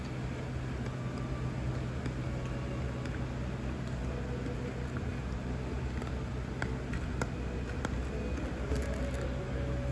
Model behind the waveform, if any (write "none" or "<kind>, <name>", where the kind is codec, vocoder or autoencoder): none